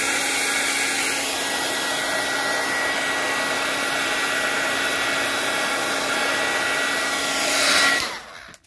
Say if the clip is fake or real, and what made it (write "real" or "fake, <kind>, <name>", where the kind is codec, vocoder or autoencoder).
real